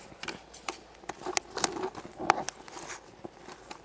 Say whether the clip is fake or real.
real